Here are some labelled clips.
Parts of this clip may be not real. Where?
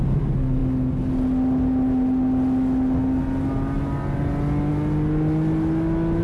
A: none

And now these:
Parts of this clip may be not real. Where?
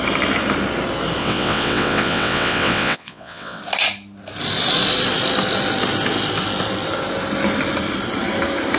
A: 1.2-3.6 (vocoder, WaveNeXt)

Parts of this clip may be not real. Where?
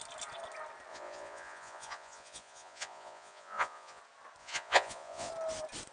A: 0.9-4.0 (vocoder, Vocos); 4.4-5.3